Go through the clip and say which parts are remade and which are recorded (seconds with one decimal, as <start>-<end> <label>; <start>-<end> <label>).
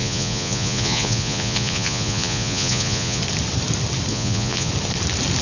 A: 0.0-3.2 remade; 3.2-4.1 recorded; 4.1-4.7 remade; 4.7-5.4 recorded